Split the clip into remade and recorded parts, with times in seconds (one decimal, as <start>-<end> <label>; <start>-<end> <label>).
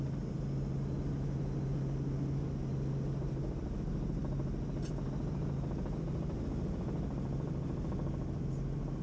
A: 0.0-9.0 recorded